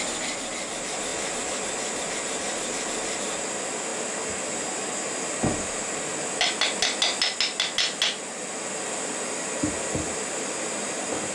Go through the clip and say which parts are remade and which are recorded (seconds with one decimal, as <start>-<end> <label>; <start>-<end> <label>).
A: 0.0-11.3 recorded